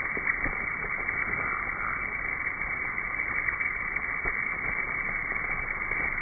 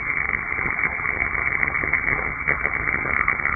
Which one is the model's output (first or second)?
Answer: second